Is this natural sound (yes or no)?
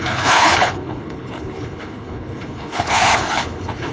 no